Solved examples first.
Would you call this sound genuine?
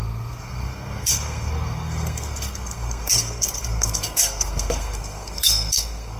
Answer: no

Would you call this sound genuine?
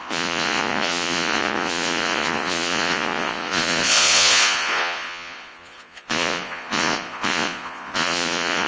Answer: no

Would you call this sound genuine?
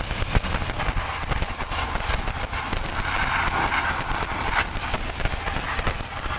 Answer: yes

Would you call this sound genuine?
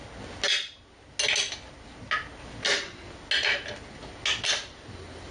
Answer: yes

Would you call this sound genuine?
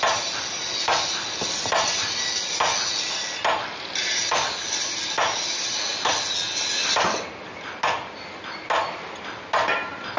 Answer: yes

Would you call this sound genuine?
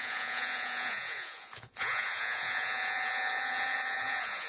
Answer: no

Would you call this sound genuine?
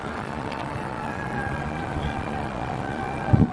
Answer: no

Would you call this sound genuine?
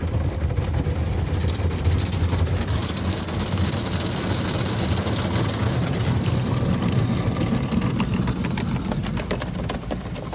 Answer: yes